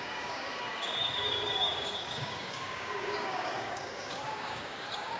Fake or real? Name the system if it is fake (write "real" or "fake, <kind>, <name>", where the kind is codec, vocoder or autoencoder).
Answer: fake, codec, DAC